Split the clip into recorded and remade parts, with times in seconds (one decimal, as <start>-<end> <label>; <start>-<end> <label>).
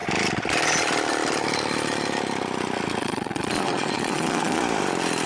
0.0-3.0 recorded; 3.0-4.6 remade; 4.6-5.3 recorded